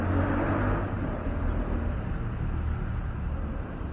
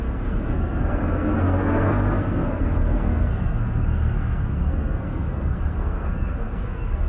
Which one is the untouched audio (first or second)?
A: first